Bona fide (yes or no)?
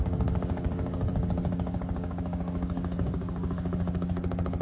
no